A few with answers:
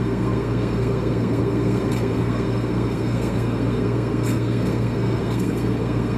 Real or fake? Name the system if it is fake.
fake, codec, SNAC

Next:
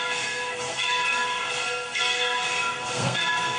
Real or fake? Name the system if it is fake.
fake, codec, SNAC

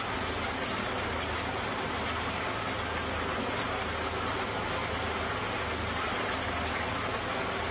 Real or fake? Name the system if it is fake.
real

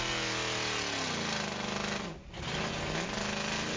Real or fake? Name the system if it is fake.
real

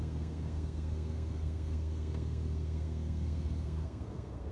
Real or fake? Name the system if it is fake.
fake, codec, SNAC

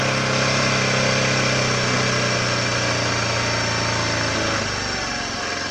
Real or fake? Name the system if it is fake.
real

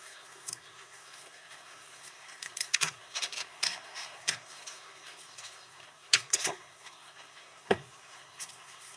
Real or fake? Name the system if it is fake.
fake, codec, SNAC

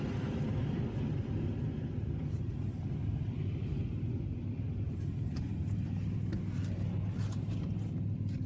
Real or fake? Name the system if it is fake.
real